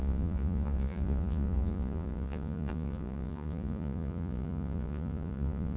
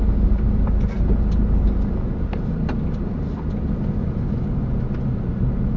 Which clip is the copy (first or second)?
first